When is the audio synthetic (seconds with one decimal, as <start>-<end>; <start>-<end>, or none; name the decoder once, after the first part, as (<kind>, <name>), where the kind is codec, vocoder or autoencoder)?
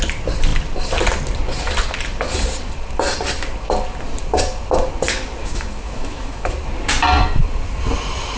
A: 5.4-6.5 (autoencoder, DAC-VAE)